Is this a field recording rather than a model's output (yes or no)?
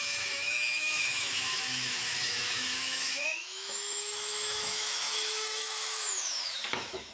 no